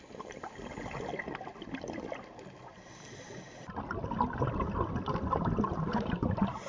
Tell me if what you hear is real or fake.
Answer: real